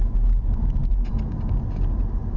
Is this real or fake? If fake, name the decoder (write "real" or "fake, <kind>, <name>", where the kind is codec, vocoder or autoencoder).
real